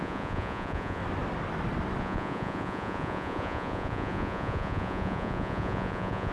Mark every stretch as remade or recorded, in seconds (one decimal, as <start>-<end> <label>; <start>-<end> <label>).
0.0-1.0 remade; 1.0-2.0 recorded; 2.0-6.3 remade